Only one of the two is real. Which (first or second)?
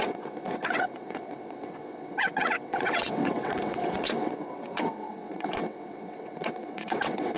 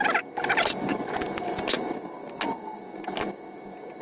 second